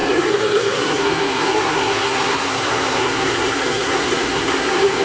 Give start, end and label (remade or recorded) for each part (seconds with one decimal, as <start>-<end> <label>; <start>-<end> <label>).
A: 0.0-5.0 remade

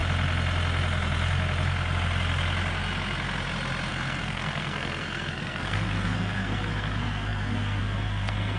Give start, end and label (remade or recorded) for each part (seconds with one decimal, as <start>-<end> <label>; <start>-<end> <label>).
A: 0.0-3.9 recorded; 3.9-8.6 remade

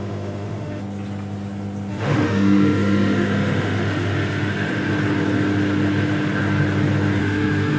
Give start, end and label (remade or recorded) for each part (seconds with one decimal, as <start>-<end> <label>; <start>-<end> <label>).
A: 0.0-0.8 remade; 0.8-1.9 recorded; 1.9-4.7 remade; 4.7-7.2 recorded; 7.2-7.8 remade

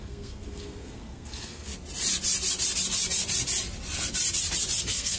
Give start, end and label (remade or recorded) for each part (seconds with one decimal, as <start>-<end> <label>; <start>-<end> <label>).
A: 0.0-1.7 remade; 1.7-4.8 recorded; 4.8-5.2 remade

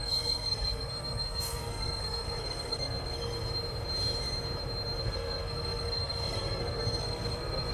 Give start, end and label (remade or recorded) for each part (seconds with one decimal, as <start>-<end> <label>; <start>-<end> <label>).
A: 0.0-3.3 remade; 3.3-5.0 recorded; 5.0-7.7 remade

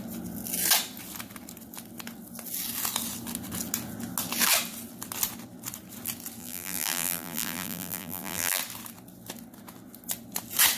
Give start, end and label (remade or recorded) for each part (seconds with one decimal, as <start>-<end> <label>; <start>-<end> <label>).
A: 0.0-6.4 recorded; 6.4-8.6 remade; 8.6-10.8 recorded

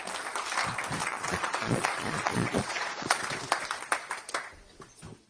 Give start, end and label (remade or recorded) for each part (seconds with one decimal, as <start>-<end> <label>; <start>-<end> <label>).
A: 0.0-1.0 recorded; 1.0-3.2 remade; 3.2-5.3 recorded

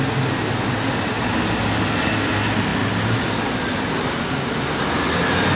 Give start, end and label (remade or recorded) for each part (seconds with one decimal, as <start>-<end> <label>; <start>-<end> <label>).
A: 0.0-5.6 recorded